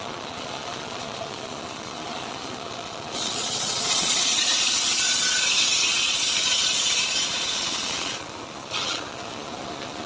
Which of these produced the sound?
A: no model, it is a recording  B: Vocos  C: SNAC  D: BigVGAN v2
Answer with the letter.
B